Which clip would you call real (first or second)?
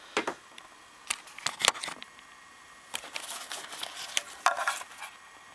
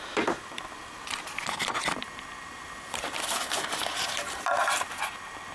first